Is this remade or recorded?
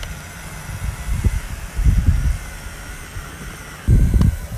recorded